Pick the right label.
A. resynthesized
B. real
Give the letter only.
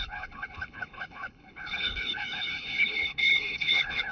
A